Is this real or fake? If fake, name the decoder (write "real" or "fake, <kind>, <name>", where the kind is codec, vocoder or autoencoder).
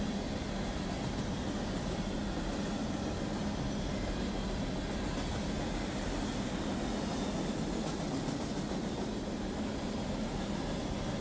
real